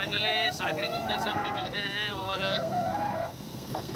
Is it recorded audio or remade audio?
remade